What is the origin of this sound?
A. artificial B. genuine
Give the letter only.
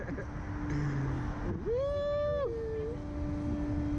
B